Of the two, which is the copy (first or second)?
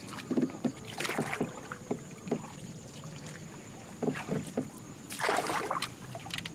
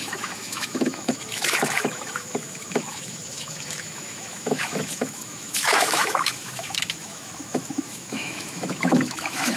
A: second